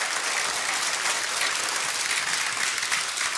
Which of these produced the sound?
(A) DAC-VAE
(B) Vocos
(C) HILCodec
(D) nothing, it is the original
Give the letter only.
D